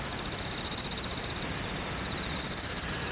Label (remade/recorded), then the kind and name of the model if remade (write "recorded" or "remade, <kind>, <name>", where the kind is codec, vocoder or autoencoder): recorded